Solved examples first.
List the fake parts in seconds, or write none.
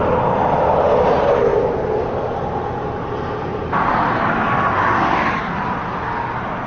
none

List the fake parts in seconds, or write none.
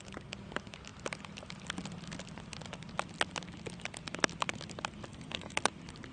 5.1-5.6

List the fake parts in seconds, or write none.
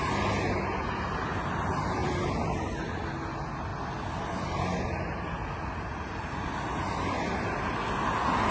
5.9-6.7